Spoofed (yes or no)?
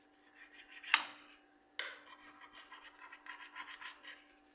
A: no